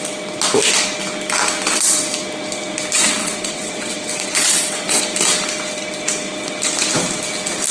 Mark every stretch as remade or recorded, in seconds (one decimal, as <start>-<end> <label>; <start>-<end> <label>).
0.0-3.2 recorded; 3.2-5.0 remade; 5.0-7.7 recorded

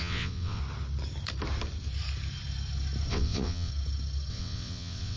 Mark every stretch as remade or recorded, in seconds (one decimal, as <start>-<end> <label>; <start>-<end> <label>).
0.0-0.6 remade; 0.6-3.1 recorded; 3.1-3.7 remade; 3.7-4.3 recorded; 4.3-5.2 remade

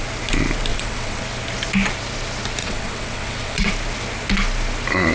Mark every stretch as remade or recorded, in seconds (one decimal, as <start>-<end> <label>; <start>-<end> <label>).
0.0-0.7 recorded; 0.7-1.2 remade; 1.2-2.6 recorded; 2.6-3.7 remade; 3.7-5.1 recorded

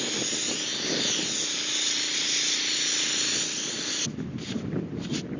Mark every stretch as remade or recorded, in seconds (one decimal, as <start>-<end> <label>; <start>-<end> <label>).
0.0-5.4 recorded

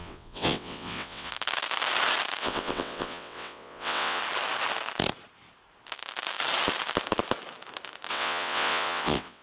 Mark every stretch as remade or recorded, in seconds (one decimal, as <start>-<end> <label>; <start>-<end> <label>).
0.0-1.3 remade; 1.3-2.4 recorded; 2.4-4.2 remade; 4.2-8.1 recorded; 8.1-9.4 remade